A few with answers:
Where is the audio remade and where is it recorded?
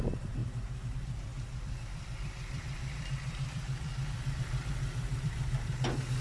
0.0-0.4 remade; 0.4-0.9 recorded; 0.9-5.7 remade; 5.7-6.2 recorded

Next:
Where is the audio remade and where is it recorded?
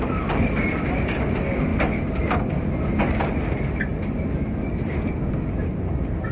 0.0-6.3 recorded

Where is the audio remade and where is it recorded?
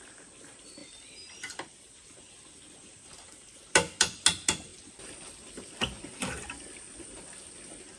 0.0-8.0 recorded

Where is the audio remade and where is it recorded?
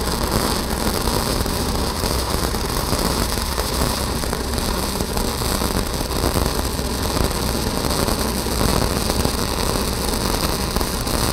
0.0-1.3 recorded; 1.3-5.1 remade; 5.1-11.3 recorded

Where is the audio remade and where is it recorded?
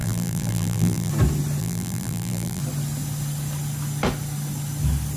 0.0-1.1 remade; 1.1-1.6 recorded; 1.6-2.6 remade; 2.6-5.2 recorded